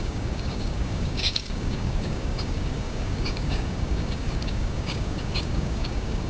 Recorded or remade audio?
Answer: remade